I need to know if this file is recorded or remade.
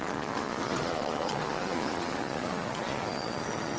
remade